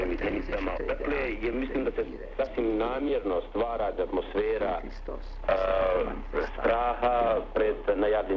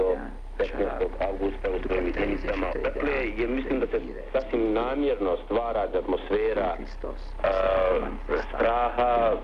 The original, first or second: second